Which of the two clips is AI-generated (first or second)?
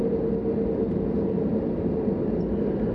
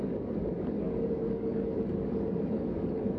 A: second